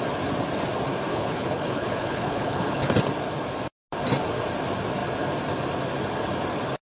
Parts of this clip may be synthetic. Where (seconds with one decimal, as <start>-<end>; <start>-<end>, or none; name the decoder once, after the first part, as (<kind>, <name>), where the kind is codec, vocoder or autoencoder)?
1.1-2.9 (codec, HILCodec)